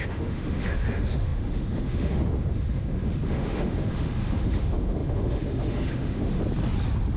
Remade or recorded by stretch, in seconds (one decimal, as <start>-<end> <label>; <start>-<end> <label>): 0.0-6.4 remade; 6.4-7.2 recorded